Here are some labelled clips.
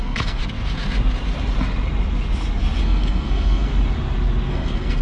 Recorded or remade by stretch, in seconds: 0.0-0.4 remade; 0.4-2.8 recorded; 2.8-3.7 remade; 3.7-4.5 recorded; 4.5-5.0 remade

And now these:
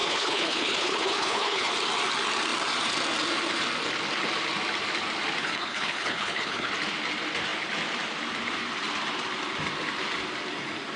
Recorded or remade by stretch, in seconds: 0.0-1.7 remade; 1.7-5.4 recorded; 5.4-6.7 remade; 6.7-11.0 recorded

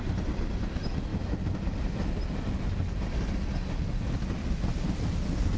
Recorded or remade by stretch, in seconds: 0.0-5.6 recorded

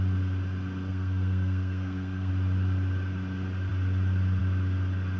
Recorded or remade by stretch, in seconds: 0.0-0.9 recorded; 0.9-2.3 remade; 2.3-5.2 recorded